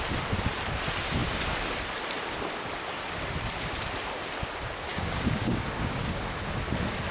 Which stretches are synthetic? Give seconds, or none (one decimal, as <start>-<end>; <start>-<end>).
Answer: 4.9-6.2

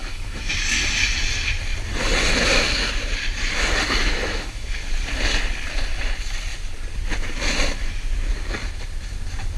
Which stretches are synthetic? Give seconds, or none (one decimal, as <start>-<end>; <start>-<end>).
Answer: 0.0-0.5; 4.0-4.8

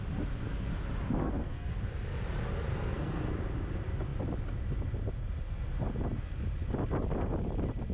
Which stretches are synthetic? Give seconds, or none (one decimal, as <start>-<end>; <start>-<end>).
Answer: 1.2-1.7; 2.7-3.3

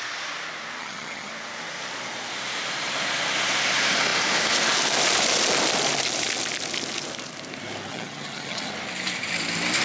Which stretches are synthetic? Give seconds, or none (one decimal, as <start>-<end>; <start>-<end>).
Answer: 0.8-1.3; 7.9-8.7

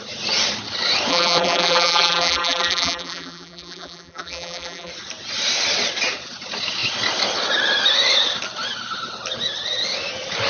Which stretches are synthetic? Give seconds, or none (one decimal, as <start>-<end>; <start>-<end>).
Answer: 1.1-4.9

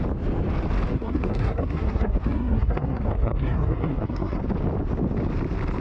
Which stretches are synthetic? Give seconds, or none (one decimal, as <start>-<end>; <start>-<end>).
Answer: 0.9-4.4